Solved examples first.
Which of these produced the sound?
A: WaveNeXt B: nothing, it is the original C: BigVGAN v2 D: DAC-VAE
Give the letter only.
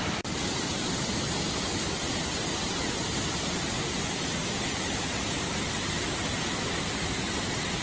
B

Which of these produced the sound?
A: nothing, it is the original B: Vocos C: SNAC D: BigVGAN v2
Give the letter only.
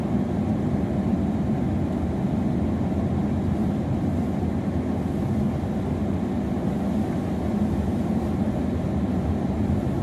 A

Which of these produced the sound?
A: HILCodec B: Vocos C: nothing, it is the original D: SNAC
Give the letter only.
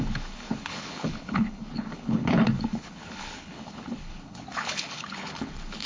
A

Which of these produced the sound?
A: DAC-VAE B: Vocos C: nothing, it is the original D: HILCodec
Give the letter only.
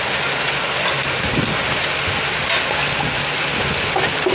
C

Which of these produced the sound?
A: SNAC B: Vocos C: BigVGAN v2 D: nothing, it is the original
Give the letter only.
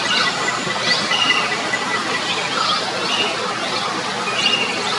D